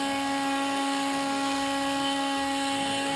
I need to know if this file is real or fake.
fake